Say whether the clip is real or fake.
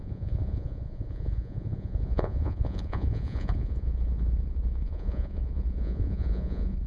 fake